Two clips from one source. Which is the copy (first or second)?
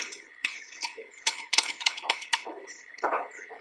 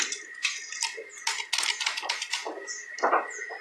first